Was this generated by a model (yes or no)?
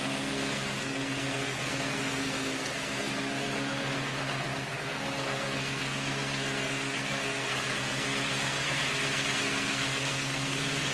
yes